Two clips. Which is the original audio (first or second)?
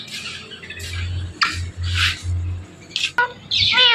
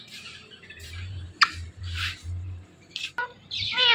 first